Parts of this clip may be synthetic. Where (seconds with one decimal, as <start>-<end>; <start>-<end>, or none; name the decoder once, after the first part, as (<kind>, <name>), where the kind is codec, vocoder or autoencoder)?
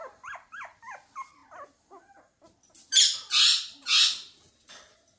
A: none